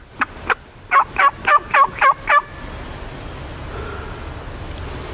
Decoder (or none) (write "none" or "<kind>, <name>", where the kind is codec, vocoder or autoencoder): none